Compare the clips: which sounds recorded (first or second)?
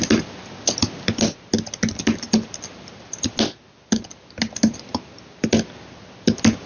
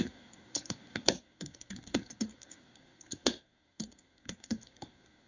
first